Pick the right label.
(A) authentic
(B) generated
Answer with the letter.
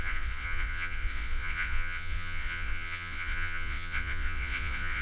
B